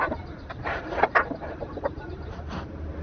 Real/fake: fake